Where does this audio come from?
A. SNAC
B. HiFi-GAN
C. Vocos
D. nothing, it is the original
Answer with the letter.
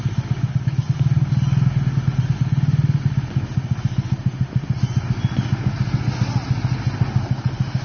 D